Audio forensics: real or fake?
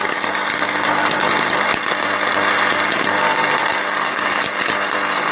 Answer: real